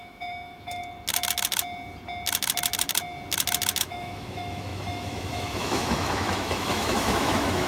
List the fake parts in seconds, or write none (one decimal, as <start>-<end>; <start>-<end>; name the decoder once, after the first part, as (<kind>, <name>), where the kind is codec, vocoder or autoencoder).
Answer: 0.0-0.8 (autoencoder, DAC-VAE); 3.8-7.7